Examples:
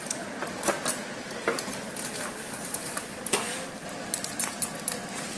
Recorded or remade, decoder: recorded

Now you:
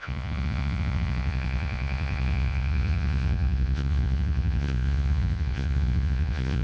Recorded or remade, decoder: remade, vocoder, Vocos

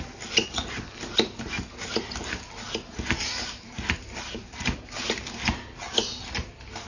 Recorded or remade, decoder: recorded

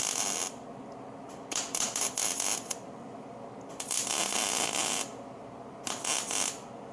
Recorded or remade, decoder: recorded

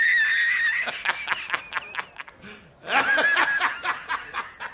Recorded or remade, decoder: recorded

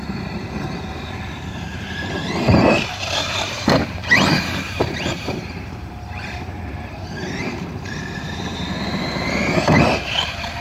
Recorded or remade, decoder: remade, vocoder, BigVGAN v2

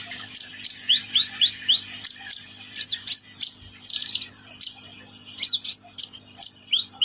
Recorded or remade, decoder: remade, vocoder, BigVGAN v2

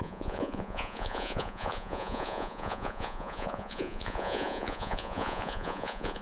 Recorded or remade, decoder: remade, vocoder, Vocos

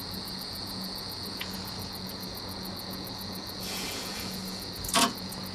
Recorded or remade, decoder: remade, vocoder, Vocos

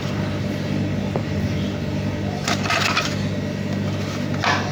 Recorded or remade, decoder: recorded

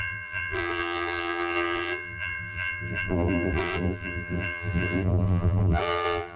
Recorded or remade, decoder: remade, vocoder, BigVGAN v2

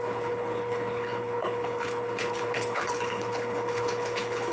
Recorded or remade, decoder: remade, codec, HILCodec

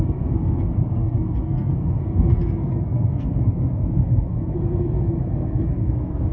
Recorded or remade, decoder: remade, codec, SNAC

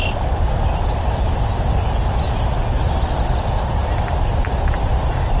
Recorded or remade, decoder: remade, vocoder, BigVGAN v2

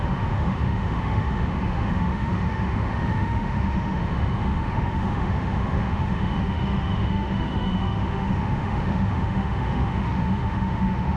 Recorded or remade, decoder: remade, autoencoder, DAC-VAE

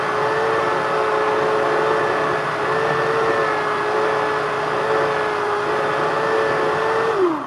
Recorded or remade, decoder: recorded